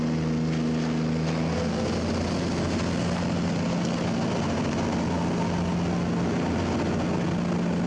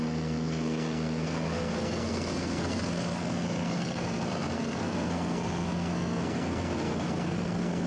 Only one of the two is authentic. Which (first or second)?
first